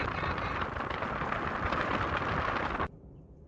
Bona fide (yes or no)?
yes